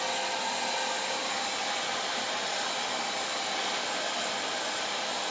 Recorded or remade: recorded